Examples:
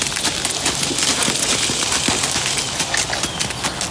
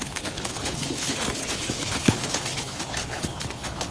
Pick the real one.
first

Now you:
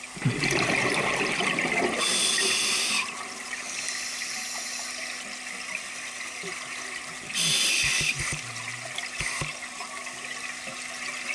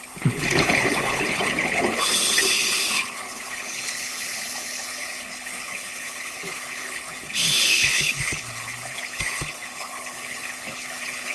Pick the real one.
first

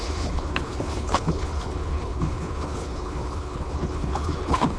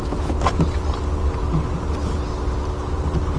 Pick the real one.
second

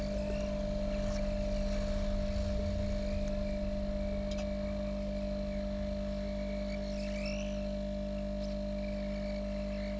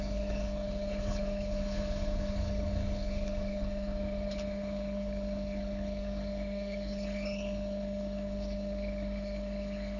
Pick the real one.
first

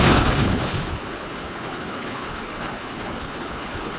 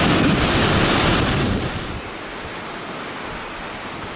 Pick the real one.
second